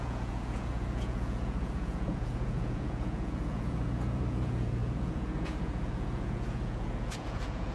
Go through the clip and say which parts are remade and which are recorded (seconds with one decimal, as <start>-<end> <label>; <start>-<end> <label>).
0.0-7.7 remade